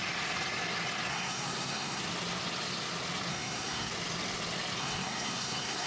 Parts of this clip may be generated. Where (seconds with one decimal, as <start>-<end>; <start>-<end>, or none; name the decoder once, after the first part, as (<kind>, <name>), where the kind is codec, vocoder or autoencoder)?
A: 1.1-2.0 (codec, SNAC); 3.3-3.9; 4.8-5.9